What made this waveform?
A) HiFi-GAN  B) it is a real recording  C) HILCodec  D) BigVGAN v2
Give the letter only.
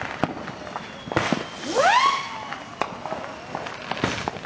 B